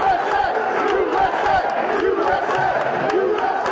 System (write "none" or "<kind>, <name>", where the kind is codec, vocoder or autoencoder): none